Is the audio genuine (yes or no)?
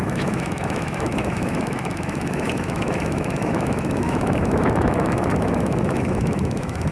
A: no